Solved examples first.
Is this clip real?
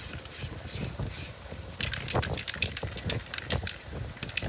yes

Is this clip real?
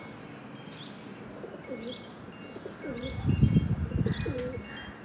yes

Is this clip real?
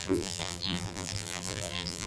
no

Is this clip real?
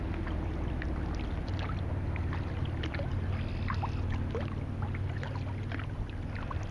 yes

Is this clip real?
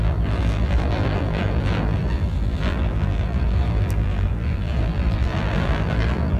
no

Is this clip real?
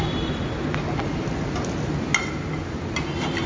yes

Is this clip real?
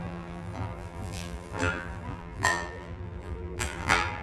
no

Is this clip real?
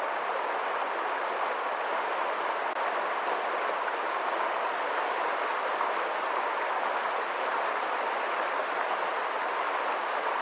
yes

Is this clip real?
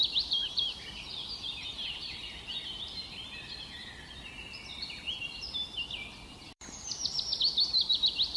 no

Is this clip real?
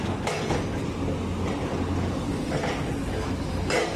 yes